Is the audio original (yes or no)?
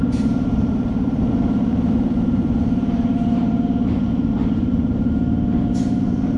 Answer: no